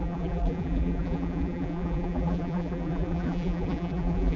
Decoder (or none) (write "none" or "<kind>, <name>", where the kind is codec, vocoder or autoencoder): vocoder, BigVGAN v2